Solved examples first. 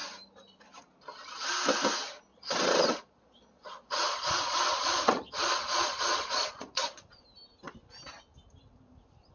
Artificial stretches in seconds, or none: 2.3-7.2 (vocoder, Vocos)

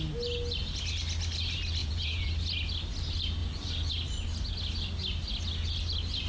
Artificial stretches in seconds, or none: 1.8-2.3 (vocoder, Vocos)

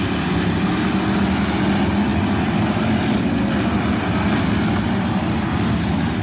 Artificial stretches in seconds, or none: none

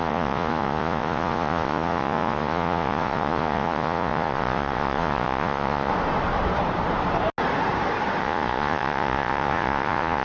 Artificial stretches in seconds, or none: 0.0-5.9 (vocoder, Vocos); 8.2-10.2

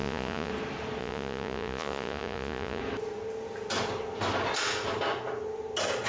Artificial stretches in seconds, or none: 0.0-0.5 (vocoder, Vocos); 1.0-2.8

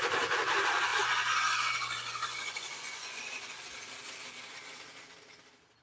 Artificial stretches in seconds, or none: 0.9-3.5 (vocoder, Vocos)

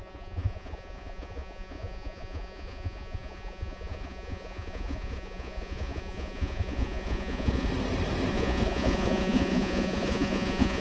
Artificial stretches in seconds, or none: 0.0-7.7 (vocoder, Vocos); 8.3-10.8

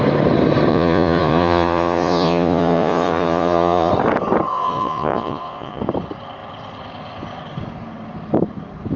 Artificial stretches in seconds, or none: 0.7-3.9 (vocoder, Vocos); 4.5-5.8